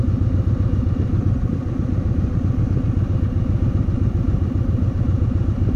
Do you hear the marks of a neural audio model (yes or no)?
no